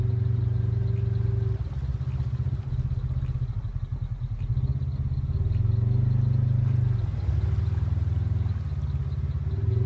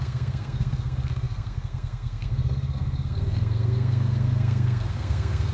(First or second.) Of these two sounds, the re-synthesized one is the second